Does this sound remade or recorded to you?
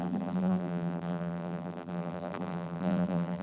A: remade